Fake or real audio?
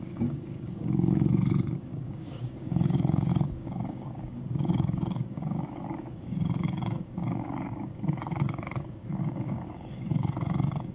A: fake